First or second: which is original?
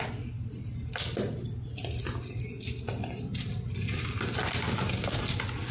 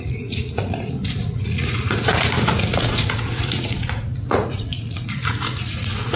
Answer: first